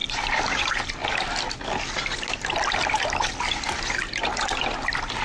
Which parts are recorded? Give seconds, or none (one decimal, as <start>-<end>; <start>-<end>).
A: 0.6-5.2